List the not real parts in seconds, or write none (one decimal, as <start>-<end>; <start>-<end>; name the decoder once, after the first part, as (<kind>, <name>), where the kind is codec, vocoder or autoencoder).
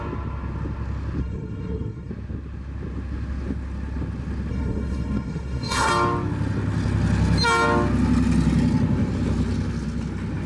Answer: 1.2-2.1 (codec, SNAC); 4.5-5.9